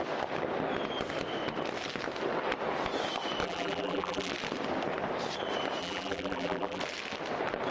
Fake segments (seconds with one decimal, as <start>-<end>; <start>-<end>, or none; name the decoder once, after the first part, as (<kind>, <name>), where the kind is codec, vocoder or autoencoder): 3.4-4.3 (vocoder, BigVGAN v2); 5.8-6.8